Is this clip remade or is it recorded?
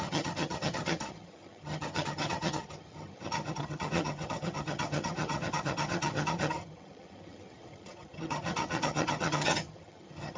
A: remade